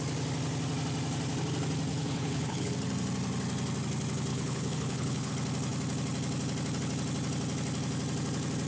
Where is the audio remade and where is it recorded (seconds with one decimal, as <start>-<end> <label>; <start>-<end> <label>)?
0.0-1.9 recorded; 1.9-2.7 remade; 2.7-4.3 recorded; 4.3-5.3 remade; 5.3-8.7 recorded

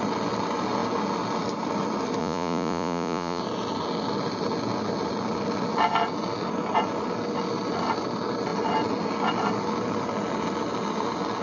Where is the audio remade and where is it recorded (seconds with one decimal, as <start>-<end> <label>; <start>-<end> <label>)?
0.0-2.2 recorded; 2.2-3.4 remade; 3.4-11.4 recorded

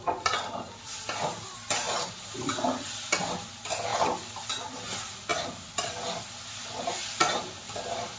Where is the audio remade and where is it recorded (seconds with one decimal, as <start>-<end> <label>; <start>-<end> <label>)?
0.0-8.2 recorded

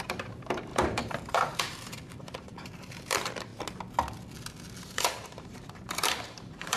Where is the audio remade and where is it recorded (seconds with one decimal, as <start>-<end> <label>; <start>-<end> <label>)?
0.0-3.5 remade; 3.5-4.8 recorded; 4.8-6.8 remade

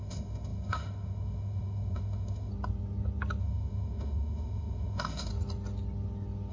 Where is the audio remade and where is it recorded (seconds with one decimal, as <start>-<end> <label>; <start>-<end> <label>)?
0.0-2.5 remade; 2.5-3.4 recorded; 3.4-5.3 remade; 5.3-6.5 recorded

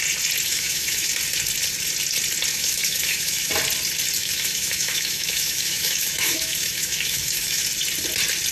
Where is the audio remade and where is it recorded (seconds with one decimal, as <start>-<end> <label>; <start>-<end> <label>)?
0.0-0.5 recorded; 0.5-1.1 remade; 1.1-2.5 recorded; 2.5-3.5 remade; 3.5-4.2 recorded; 4.2-7.6 remade; 7.6-8.5 recorded